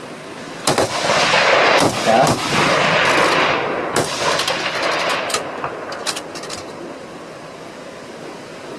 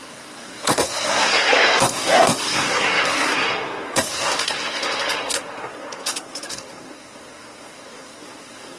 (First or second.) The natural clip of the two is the first